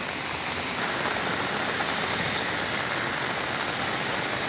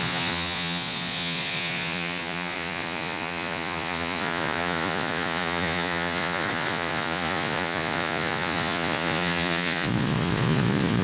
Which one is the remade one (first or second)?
second